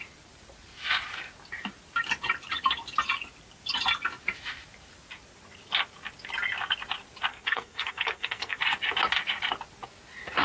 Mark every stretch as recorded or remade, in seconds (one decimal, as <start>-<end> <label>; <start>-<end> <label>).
0.0-7.3 recorded; 7.3-8.6 remade; 8.6-10.4 recorded